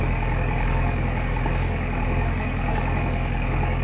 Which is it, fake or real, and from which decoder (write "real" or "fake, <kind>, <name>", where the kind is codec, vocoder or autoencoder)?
fake, codec, DAC